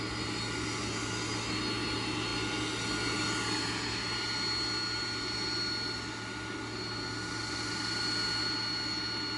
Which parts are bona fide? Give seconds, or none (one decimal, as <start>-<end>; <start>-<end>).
0.0-9.4